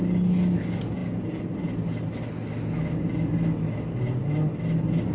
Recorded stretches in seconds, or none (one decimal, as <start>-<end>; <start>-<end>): 0.0-5.1